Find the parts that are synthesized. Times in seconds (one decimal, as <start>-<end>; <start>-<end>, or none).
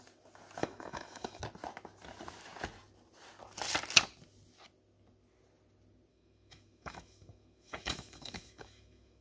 0.6-1.4; 6.1-9.2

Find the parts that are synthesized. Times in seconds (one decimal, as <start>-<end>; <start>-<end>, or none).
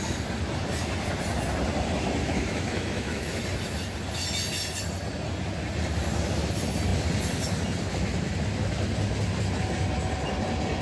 2.2-3.4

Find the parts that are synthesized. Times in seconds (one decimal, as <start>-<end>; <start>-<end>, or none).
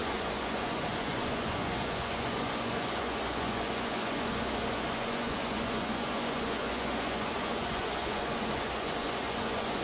0.0-9.8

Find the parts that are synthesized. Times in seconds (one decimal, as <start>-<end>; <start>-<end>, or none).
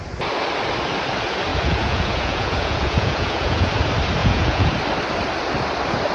1.5-3.7; 4.2-4.7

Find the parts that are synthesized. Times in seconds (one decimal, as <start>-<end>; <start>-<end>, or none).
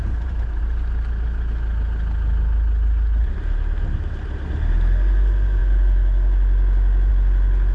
0.0-0.6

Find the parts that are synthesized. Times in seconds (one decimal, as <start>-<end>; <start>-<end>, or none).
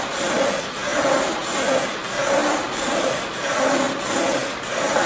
2.4-2.9